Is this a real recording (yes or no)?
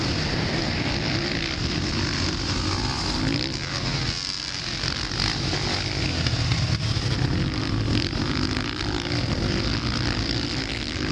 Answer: yes